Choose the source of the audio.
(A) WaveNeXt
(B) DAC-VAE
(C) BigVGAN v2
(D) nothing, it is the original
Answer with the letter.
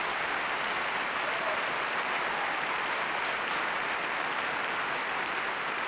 C